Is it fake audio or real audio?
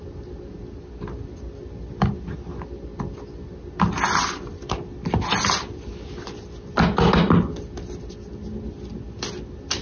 real